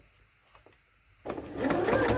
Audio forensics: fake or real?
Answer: real